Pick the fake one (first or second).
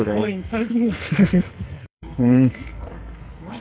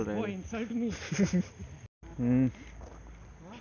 first